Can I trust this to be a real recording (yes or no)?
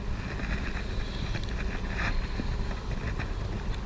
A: yes